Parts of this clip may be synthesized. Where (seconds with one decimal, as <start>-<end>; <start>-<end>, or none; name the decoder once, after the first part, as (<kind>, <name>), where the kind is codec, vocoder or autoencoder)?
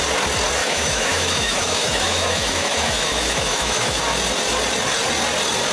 0.6-4.0 (autoencoder, DAC-VAE)